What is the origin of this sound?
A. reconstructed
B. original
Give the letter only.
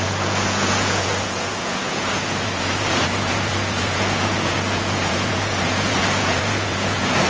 A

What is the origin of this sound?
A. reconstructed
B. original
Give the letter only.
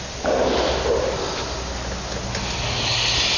B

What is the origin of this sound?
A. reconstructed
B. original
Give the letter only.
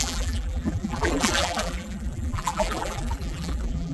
A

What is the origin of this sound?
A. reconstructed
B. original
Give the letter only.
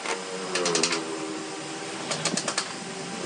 B